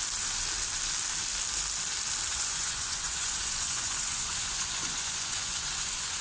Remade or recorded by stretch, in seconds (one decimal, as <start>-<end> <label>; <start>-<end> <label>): 0.0-2.3 recorded; 2.3-6.2 remade